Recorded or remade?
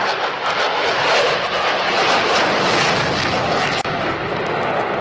recorded